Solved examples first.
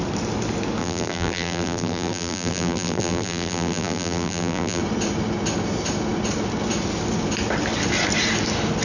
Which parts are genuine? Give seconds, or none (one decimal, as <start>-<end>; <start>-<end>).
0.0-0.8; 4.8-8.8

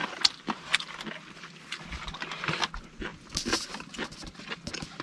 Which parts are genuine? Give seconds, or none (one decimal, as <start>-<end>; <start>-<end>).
2.1-5.0

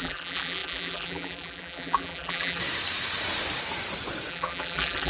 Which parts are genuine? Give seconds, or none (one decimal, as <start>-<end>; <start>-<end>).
2.6-4.3